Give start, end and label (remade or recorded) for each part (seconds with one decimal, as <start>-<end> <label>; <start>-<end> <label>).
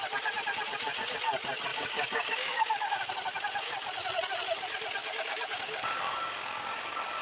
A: 0.0-1.7 recorded; 1.7-3.0 remade; 3.0-5.0 recorded; 5.0-7.2 remade